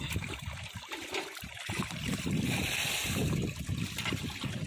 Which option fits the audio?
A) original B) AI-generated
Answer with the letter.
B